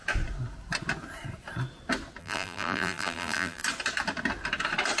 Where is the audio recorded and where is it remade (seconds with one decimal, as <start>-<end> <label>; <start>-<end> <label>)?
0.0-2.2 recorded; 2.2-3.6 remade; 3.6-5.0 recorded

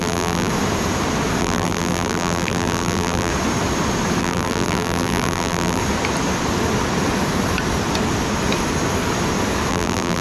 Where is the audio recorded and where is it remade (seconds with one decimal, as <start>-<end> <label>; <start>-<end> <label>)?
0.0-0.5 remade; 0.5-1.4 recorded; 1.4-3.3 remade; 3.3-4.2 recorded; 4.2-5.8 remade; 5.8-9.7 recorded; 9.7-10.2 remade

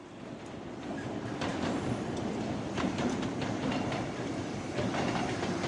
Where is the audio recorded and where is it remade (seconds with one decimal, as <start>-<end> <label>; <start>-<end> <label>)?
0.0-5.7 recorded

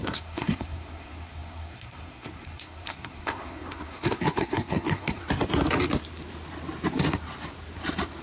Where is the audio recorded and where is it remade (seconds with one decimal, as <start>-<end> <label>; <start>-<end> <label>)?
0.0-5.2 remade; 5.2-8.2 recorded

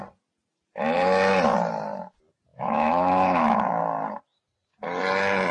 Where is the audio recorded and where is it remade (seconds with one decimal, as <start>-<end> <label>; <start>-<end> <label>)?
0.0-2.5 recorded; 2.5-3.8 remade; 3.8-5.5 recorded

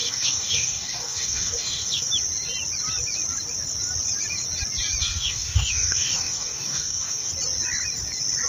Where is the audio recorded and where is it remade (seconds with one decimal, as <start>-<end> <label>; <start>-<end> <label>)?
0.0-2.1 remade; 2.1-5.0 recorded; 5.0-7.3 remade; 7.3-8.5 recorded